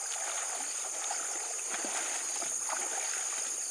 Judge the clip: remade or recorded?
recorded